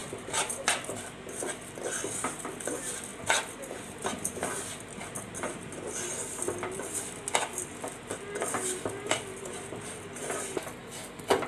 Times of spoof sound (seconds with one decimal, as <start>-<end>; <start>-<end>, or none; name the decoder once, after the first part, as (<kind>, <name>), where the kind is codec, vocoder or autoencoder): none